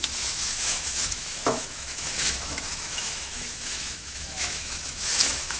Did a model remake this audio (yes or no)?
yes